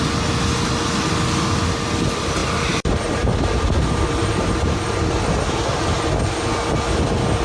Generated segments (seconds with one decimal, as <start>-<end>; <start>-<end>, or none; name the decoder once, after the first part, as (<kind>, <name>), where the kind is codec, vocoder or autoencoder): 2.4-5.8 (vocoder, BigVGAN v2)